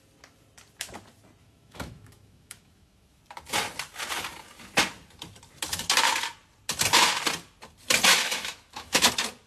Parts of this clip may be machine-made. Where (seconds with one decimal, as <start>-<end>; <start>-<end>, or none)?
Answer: 1.4-3.2; 8.1-9.1